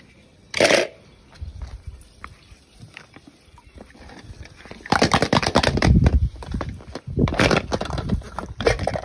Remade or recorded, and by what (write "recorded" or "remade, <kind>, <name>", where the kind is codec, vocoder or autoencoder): recorded